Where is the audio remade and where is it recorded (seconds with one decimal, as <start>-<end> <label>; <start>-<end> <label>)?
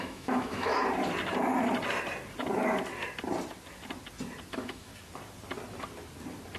0.0-0.7 remade; 0.7-4.5 recorded; 4.5-4.9 remade; 4.9-6.6 recorded